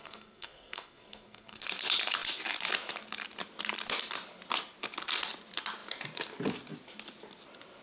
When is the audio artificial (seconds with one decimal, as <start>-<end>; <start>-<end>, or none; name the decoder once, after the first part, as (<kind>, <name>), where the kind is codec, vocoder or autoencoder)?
0.0-1.6 (codec, SNAC)